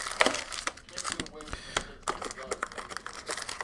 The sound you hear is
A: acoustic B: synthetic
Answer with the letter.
A